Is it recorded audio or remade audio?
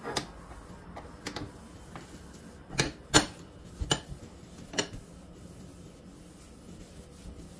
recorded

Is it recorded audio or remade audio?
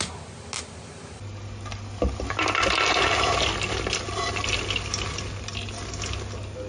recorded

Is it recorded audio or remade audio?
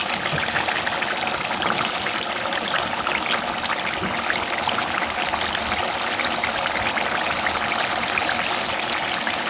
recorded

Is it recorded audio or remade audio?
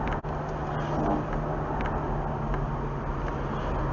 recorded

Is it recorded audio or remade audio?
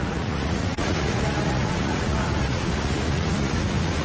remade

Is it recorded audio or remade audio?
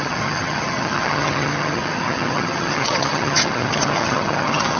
remade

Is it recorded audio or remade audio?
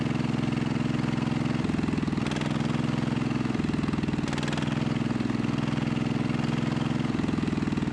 recorded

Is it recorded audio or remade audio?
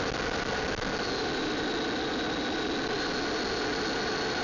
recorded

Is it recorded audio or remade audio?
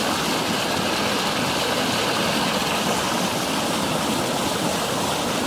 recorded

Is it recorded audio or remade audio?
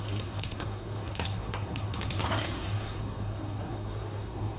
remade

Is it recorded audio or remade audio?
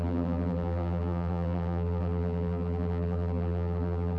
remade